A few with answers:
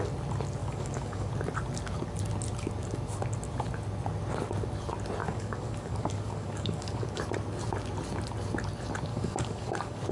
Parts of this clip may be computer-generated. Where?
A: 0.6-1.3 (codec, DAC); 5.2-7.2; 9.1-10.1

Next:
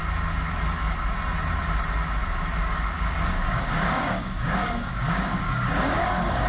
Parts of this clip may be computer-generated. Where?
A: 2.6-6.5 (codec, DAC)